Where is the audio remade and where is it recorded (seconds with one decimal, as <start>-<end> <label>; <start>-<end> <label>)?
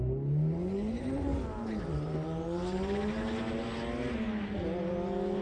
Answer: 0.0-5.4 recorded